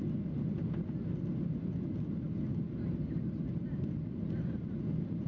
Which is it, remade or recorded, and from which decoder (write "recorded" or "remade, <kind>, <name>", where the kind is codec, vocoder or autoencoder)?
recorded